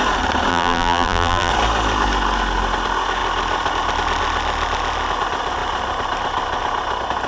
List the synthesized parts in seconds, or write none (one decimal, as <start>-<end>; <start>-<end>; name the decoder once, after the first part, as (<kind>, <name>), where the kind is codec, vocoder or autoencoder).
0.5-1.5 (vocoder, BigVGAN v2)